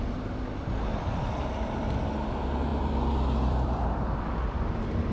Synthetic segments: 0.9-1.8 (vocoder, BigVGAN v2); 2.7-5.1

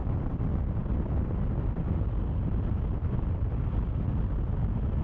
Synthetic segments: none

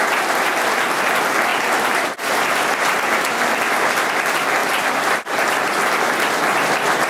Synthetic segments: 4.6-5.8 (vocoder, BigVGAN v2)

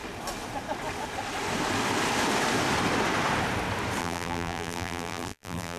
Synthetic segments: 4.0-5.8 (vocoder, BigVGAN v2)

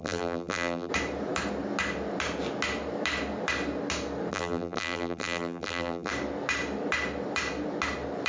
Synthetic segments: 0.0-0.9 (vocoder, BigVGAN v2); 4.3-6.1

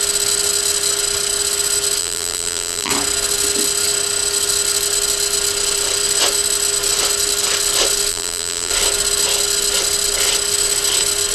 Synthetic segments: 2.0-2.9 (vocoder, BigVGAN v2); 8.1-8.7

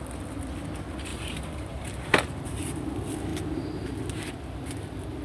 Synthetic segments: 1.1-2.8 (vocoder, BigVGAN v2)

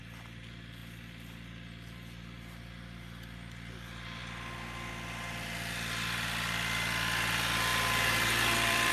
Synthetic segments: 7.7-8.9 (vocoder, BigVGAN v2)